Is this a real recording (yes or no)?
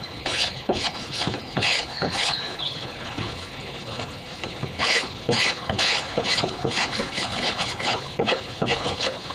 no